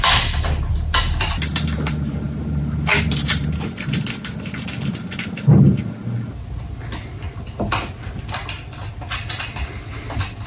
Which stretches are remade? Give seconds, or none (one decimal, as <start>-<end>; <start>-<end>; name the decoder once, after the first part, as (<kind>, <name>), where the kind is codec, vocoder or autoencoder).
none